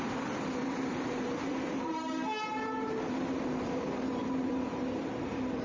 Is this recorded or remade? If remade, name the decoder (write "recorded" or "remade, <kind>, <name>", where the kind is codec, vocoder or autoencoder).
remade, vocoder, BigVGAN v2